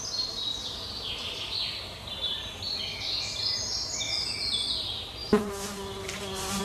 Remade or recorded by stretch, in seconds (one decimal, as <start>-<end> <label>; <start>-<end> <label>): 0.0-5.2 recorded; 5.2-6.6 remade